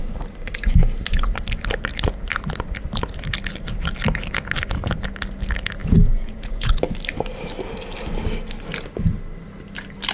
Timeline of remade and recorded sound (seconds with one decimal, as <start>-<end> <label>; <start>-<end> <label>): 0.0-5.8 recorded; 5.8-6.8 remade; 6.8-10.1 recorded